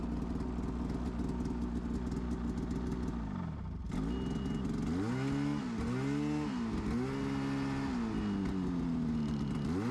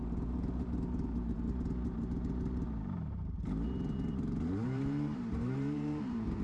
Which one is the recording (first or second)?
first